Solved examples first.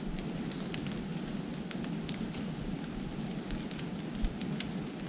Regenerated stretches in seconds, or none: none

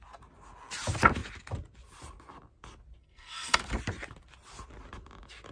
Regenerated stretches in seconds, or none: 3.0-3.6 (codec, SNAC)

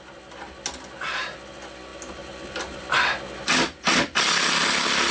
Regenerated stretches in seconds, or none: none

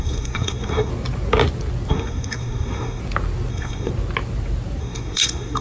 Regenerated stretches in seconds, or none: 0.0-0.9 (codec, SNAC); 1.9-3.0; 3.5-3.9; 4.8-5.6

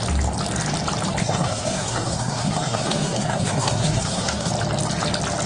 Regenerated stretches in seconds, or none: 1.2-4.5 (codec, SNAC)